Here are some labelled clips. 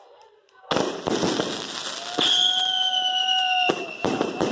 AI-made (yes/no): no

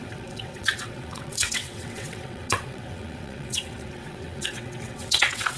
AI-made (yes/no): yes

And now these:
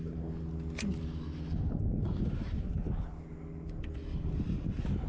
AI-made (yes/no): no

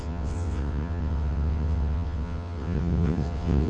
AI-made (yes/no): yes